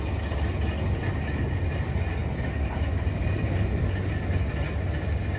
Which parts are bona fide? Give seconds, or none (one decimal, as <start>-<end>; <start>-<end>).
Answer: 0.0-5.4